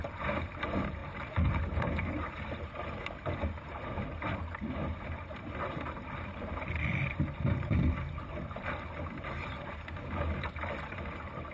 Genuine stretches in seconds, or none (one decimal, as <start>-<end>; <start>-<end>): none